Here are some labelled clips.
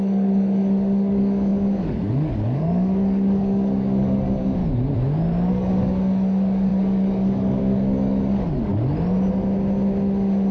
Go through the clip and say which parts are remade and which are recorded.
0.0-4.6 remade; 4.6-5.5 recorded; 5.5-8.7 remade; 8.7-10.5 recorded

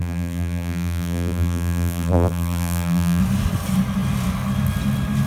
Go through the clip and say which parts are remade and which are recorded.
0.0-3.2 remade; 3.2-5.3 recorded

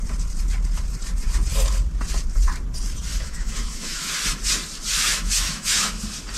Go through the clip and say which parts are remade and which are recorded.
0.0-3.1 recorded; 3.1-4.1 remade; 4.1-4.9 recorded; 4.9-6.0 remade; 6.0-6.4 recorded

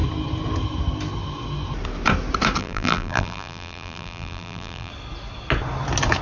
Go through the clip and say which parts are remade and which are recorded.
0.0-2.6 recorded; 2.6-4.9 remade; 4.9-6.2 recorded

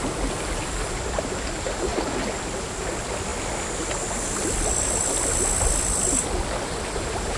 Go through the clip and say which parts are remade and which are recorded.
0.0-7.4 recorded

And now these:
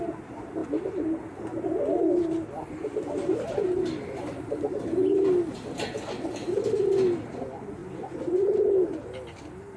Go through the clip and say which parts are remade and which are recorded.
0.0-9.8 recorded